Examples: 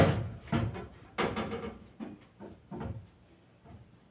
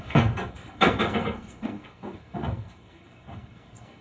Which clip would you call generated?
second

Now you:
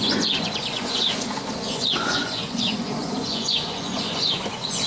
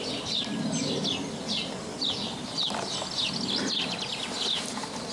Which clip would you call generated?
first